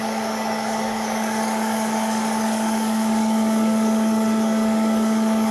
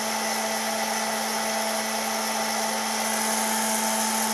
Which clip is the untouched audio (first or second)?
second